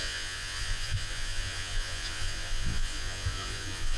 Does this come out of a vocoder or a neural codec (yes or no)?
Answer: yes